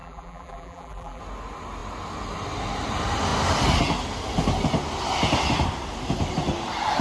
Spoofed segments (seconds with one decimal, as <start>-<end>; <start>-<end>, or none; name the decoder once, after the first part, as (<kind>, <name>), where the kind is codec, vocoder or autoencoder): 0.0-1.2 (vocoder, BigVGAN v2)